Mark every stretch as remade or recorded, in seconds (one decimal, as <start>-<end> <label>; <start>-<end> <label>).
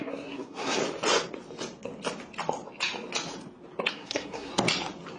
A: 0.0-0.8 remade; 0.8-3.9 recorded; 3.9-4.5 remade; 4.5-5.2 recorded